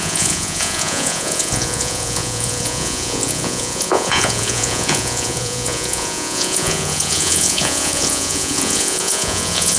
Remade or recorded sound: remade